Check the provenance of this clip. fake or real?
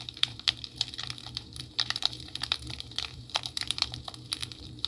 fake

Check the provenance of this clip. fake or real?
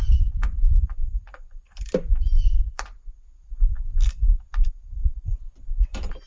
fake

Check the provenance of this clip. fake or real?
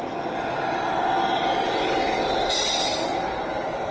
real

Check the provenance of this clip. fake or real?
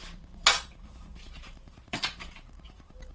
fake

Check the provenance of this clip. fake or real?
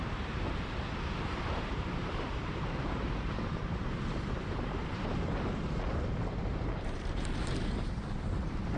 fake